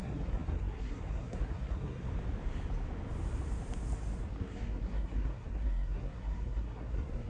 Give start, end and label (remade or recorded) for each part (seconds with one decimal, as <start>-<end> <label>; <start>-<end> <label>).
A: 0.0-2.1 remade; 2.1-4.3 recorded; 4.3-7.3 remade